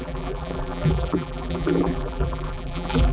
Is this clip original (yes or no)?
no